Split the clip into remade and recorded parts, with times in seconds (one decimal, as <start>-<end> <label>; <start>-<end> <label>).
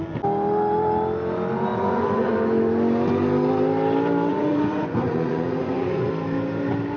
0.0-1.7 recorded; 1.7-2.3 remade; 2.3-4.3 recorded; 4.3-6.1 remade; 6.1-7.0 recorded